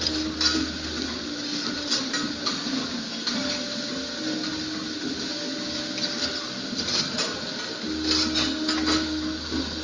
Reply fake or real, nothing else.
real